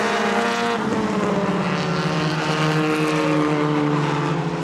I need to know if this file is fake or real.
real